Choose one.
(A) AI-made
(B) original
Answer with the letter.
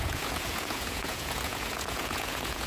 A